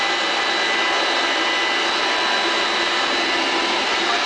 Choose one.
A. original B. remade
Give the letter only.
A